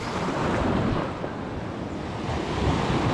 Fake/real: real